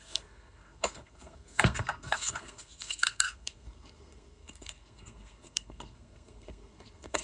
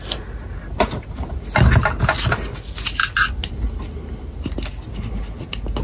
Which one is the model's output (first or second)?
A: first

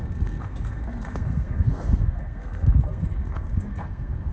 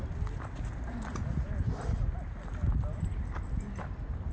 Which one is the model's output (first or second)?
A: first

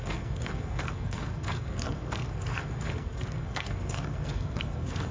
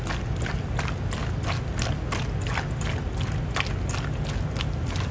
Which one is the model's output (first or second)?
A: first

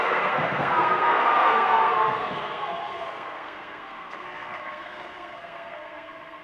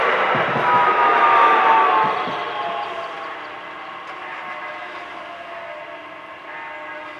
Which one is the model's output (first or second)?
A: first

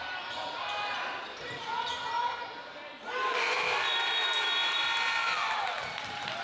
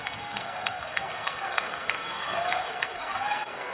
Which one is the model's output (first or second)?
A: second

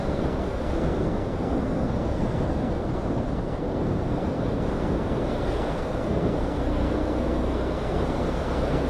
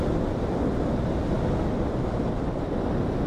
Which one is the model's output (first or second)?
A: first